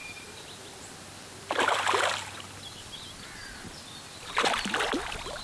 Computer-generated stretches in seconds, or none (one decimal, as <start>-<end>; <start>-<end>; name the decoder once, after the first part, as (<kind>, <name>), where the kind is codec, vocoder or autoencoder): none